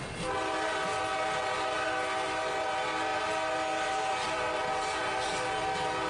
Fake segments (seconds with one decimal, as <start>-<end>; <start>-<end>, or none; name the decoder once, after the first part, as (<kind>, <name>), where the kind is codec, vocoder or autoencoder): none